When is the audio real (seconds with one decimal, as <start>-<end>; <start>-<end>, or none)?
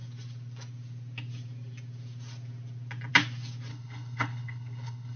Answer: 0.0-3.7